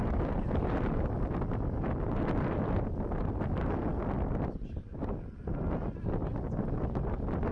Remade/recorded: remade